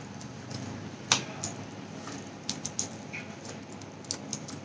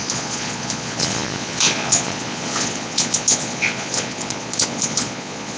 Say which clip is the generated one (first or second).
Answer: second